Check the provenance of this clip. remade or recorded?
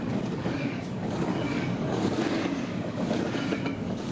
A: remade